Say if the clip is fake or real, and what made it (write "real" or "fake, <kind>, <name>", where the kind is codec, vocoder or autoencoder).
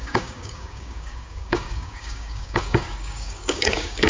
fake, codec, DAC